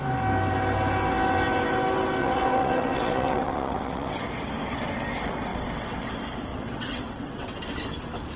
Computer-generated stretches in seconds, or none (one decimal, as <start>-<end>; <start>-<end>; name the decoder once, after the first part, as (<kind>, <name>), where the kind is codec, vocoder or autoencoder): 2.2-4.3 (vocoder, WaveNeXt); 5.5-6.1; 6.5-7.6